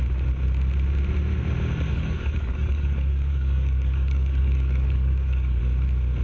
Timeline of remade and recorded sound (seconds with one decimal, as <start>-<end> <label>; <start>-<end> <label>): 0.0-1.9 recorded; 1.9-5.6 remade; 5.6-6.2 recorded